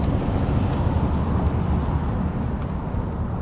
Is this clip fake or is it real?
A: real